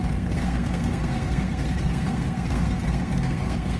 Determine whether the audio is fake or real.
fake